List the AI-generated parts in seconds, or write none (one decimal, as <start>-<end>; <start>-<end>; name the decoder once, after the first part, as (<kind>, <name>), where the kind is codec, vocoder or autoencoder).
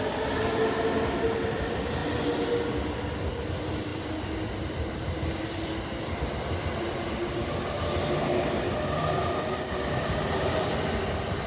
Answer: none